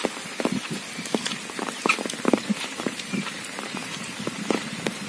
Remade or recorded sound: recorded